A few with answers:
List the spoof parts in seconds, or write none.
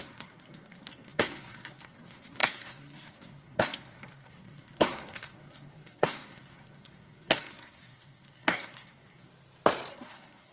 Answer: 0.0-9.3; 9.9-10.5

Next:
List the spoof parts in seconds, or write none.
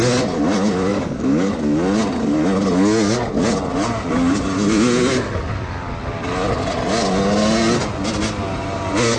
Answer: 0.9-1.5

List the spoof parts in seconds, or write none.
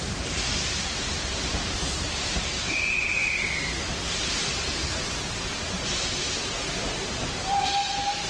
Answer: 0.0-3.2; 4.1-8.3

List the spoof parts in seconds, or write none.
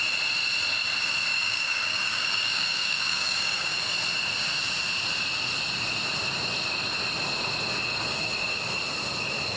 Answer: 1.3-3.9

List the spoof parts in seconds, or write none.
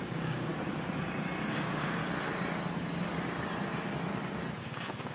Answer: 0.0-0.5; 1.5-2.0; 4.6-5.1